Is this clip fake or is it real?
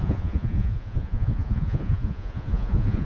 fake